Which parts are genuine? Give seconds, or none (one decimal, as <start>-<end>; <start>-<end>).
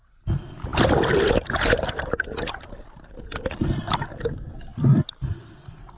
0.0-6.0